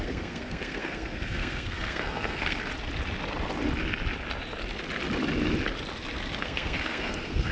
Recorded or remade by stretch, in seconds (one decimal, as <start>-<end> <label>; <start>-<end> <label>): 0.0-2.7 remade; 2.7-6.4 recorded; 6.4-7.5 remade